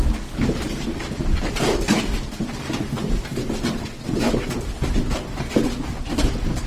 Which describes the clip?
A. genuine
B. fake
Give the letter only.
A